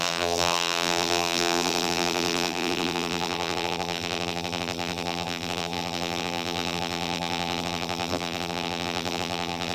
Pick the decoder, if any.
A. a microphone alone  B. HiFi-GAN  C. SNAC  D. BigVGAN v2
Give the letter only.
D